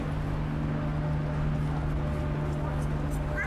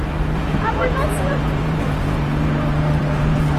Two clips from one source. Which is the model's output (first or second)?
second